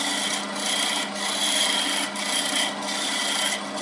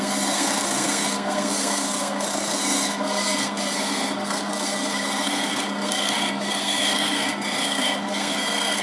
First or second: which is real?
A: first